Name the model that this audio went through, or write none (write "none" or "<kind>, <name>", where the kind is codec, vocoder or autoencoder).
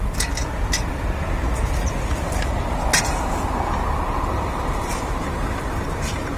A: none